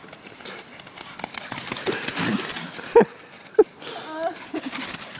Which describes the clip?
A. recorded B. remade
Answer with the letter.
A